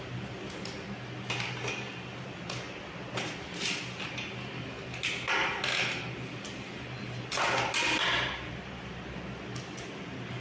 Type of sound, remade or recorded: recorded